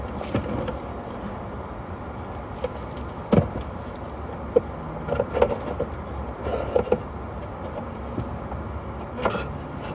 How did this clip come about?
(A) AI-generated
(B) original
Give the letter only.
B